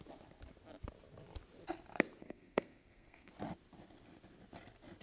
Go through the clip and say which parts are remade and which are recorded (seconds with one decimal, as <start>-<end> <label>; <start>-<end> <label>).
0.0-2.2 recorded; 2.2-3.3 remade; 3.3-5.0 recorded